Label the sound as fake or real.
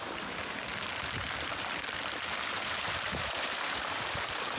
real